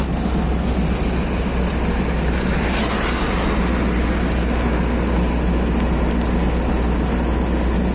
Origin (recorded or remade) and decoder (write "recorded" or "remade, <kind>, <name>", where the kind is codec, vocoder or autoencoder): recorded